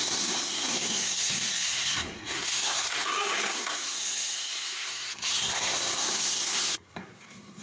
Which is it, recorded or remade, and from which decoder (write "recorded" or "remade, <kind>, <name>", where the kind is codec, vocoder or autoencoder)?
remade, codec, SNAC